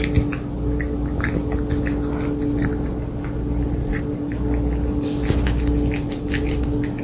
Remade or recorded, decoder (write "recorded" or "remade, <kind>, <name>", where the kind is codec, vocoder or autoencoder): recorded